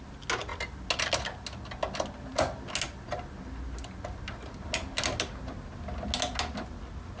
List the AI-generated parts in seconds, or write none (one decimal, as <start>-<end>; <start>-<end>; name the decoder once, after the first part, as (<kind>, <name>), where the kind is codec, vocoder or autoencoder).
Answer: none